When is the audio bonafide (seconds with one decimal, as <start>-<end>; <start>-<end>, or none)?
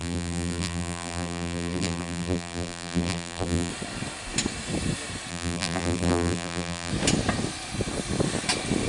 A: 3.7-5.3; 6.9-8.9